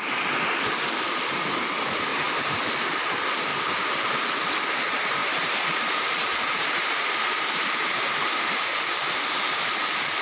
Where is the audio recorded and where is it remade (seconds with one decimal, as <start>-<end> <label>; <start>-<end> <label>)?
0.0-2.1 recorded; 2.1-2.9 remade; 2.9-3.5 recorded; 3.5-4.5 remade; 4.5-5.2 recorded; 5.2-10.2 remade